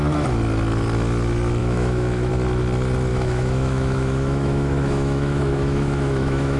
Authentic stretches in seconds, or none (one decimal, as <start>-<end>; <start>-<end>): 0.0-1.6; 2.3-3.1